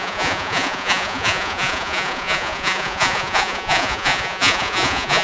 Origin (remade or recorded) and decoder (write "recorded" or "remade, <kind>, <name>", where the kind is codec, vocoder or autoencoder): remade, vocoder, Vocos